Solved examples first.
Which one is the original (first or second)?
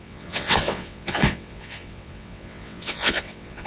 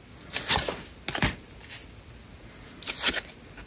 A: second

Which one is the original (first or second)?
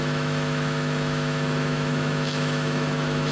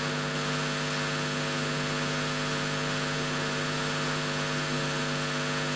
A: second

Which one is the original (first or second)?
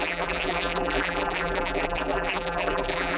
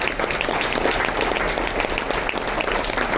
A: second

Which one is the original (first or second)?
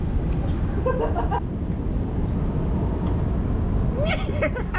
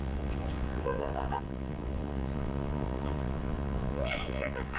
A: first